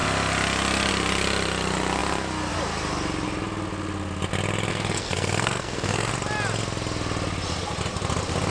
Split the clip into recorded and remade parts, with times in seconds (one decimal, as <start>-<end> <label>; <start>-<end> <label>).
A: 0.0-4.7 recorded; 4.7-6.1 remade; 6.1-8.5 recorded